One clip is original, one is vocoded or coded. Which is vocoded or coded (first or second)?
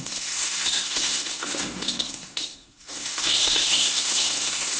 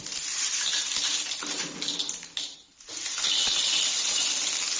first